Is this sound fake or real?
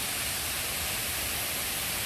real